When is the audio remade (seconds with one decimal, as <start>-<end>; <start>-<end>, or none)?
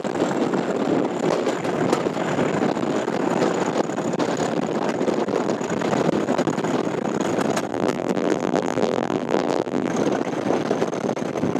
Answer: 7.7-9.9